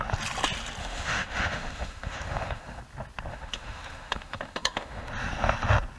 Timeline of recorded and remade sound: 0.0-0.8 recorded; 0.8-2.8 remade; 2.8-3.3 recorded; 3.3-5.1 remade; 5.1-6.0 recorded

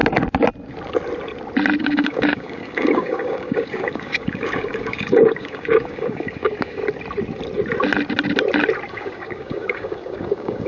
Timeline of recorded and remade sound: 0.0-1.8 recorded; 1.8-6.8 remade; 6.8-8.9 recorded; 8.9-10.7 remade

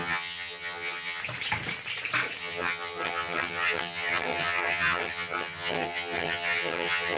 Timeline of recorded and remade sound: 0.0-1.2 remade; 1.2-2.4 recorded; 2.4-7.2 remade